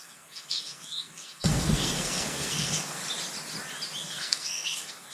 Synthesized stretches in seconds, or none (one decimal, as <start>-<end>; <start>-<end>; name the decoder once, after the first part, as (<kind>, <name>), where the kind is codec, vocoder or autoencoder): 0.0-3.0 (codec, SNAC); 4.0-5.1